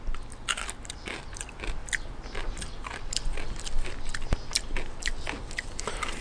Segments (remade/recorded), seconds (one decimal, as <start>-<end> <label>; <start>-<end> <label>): 0.0-6.2 recorded